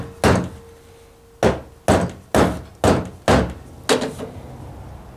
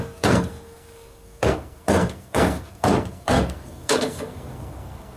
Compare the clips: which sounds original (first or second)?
first